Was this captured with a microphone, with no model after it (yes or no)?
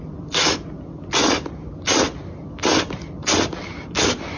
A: yes